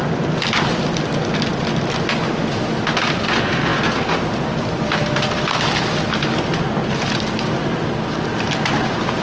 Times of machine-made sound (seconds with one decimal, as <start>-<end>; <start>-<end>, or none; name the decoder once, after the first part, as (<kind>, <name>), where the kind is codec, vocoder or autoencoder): none